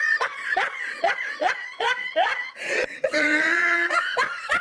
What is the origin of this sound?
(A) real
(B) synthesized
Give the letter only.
B